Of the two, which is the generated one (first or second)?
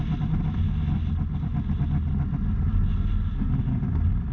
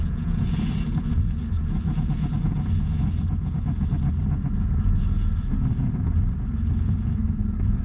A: second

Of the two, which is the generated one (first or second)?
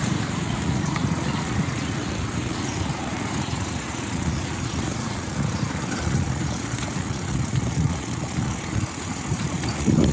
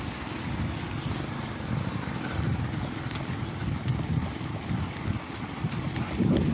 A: first